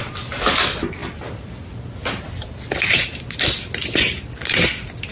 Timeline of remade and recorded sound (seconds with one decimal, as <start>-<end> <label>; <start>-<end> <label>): 0.0-5.1 recorded